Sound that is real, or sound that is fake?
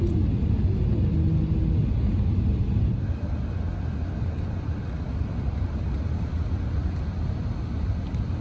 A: real